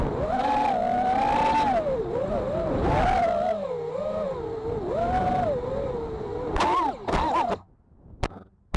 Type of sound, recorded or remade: recorded